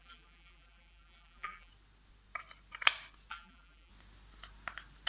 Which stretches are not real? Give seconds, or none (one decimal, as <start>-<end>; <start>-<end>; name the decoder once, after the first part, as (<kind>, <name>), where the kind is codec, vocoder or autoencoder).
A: 0.0-1.7 (vocoder, BigVGAN v2); 3.3-3.9